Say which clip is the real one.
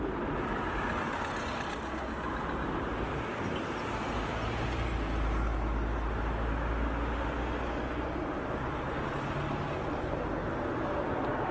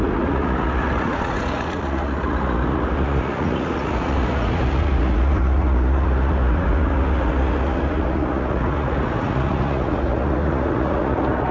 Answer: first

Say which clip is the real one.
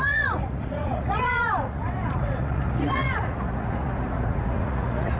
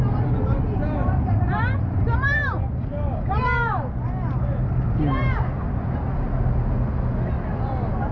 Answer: second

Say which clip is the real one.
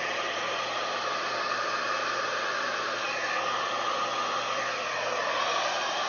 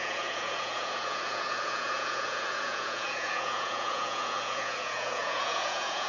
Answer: first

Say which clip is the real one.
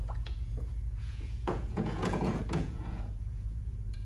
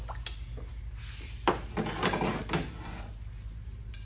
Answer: second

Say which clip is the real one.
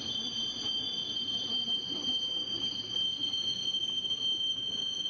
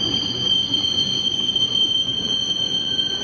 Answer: first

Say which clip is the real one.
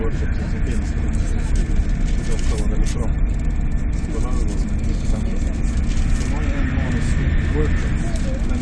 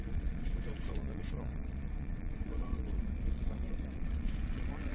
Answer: first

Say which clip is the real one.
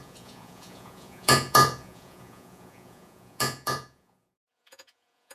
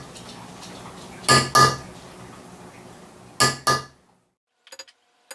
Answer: second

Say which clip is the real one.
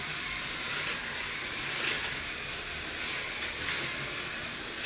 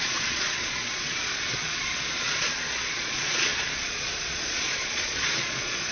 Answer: first